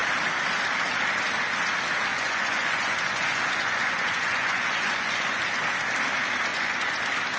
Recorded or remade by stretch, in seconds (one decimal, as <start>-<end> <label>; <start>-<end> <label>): 0.0-2.1 recorded; 2.1-5.4 remade; 5.4-6.5 recorded; 6.5-7.0 remade; 7.0-7.4 recorded